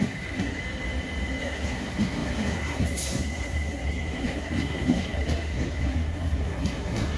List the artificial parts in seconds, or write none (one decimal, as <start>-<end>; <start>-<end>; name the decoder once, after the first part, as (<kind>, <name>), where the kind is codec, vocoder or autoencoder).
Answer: 0.0-0.6 (codec, SNAC); 1.4-7.2